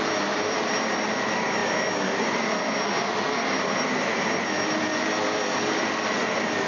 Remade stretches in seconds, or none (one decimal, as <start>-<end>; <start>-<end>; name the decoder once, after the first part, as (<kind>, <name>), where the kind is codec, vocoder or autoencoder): none